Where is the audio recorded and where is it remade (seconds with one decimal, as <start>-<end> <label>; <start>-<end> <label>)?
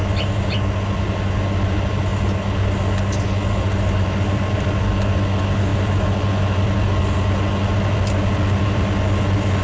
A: 0.0-9.6 recorded